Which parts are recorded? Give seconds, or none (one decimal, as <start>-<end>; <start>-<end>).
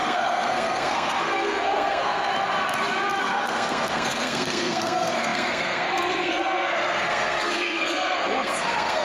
2.3-3.2